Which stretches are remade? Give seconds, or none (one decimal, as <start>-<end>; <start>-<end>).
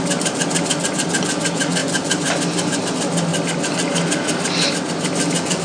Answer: none